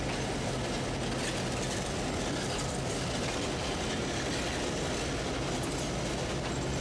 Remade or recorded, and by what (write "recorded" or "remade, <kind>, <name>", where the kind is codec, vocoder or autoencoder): recorded